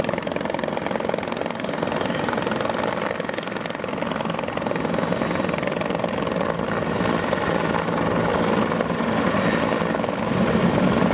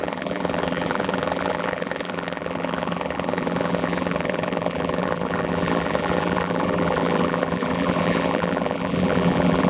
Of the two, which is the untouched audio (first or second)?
first